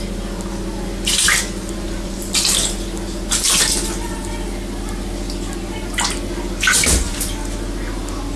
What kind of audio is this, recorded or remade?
recorded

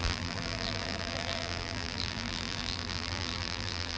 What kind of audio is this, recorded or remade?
remade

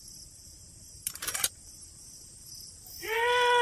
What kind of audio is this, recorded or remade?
recorded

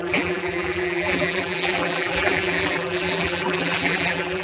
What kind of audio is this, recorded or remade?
remade